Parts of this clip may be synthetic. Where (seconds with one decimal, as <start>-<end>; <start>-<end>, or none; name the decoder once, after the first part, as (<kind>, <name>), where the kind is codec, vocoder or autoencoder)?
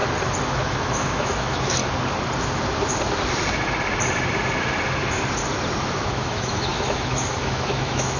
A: 0.5-1.8 (autoencoder, DAC-VAE); 5.9-8.2